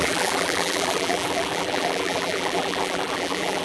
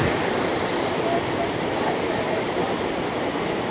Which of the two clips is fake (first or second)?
first